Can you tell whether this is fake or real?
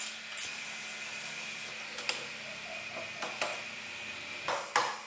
real